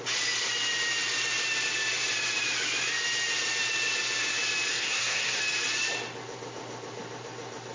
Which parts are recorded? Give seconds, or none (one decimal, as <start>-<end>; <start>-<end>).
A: 0.0-4.7; 5.4-7.7